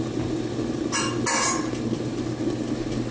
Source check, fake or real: real